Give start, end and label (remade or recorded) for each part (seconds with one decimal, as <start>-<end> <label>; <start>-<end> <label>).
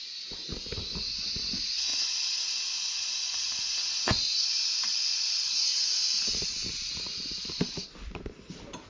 0.0-8.9 recorded